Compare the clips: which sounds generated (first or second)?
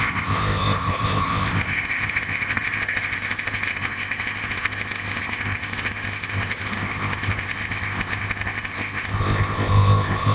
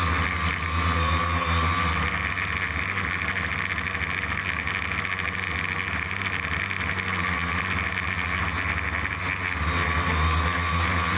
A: first